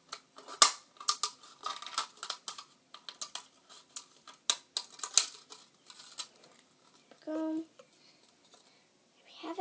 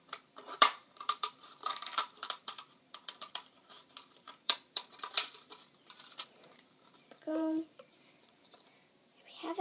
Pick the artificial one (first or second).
second